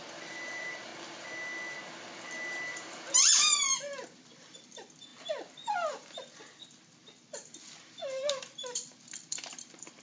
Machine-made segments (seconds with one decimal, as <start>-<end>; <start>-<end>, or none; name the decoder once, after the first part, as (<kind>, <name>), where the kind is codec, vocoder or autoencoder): 0.0-0.9 (vocoder, BigVGAN v2); 2.7-10.0